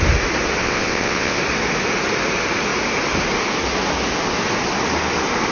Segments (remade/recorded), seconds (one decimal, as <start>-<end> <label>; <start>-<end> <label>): 0.0-0.6 recorded; 0.6-1.4 remade; 1.4-5.5 recorded